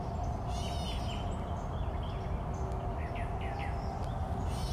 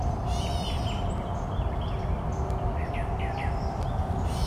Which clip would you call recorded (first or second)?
first